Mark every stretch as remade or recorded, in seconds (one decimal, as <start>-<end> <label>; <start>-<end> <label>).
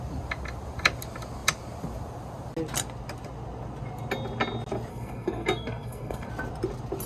0.0-4.9 recorded; 4.9-6.3 remade; 6.3-7.1 recorded